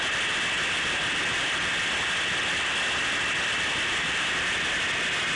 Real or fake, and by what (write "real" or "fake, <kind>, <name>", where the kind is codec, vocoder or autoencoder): real